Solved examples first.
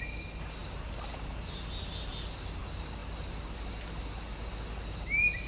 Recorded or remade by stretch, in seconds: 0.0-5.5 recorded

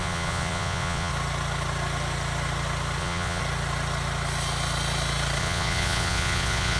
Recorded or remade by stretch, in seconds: 0.0-1.1 remade; 1.1-3.0 recorded; 3.0-3.4 remade; 3.4-5.4 recorded; 5.4-6.8 remade

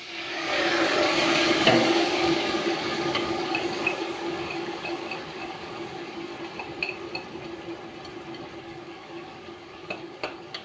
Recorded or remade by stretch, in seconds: 0.0-6.3 remade; 6.3-8.6 recorded; 8.6-10.6 remade

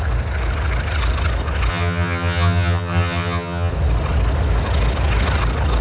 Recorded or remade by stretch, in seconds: 0.0-1.7 recorded; 1.7-3.7 remade; 3.7-5.8 recorded